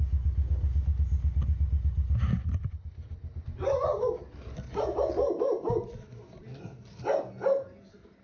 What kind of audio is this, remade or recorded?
recorded